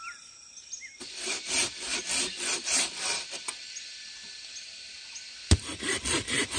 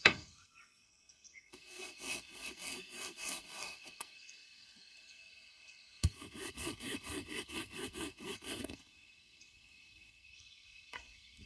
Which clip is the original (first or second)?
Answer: first